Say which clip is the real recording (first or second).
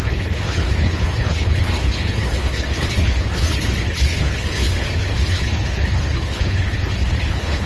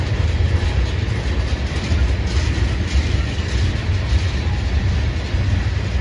second